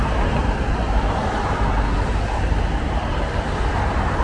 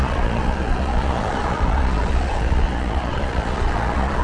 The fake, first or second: second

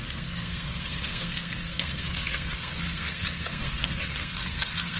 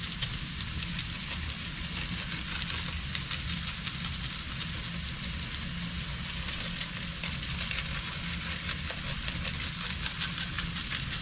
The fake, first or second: first